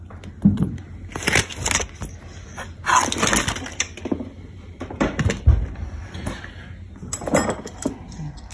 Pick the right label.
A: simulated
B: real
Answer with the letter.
B